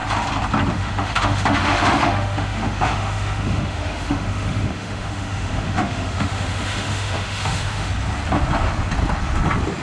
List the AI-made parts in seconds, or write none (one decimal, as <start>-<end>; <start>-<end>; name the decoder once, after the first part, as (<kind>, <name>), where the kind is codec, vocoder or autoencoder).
0.7-7.9 (autoencoder, DAC-VAE)